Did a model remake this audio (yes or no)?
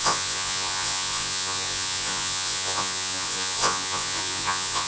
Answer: yes